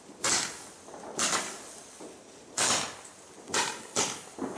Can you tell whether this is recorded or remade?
recorded